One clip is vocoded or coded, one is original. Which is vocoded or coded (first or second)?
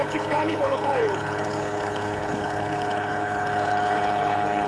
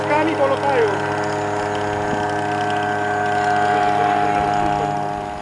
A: first